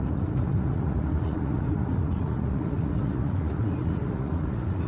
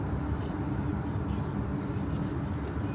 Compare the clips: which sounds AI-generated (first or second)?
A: first